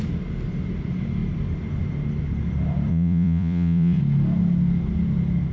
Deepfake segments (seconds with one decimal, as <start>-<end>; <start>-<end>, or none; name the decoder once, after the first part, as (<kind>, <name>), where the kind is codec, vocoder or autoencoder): 2.9-4.0 (vocoder, Vocos)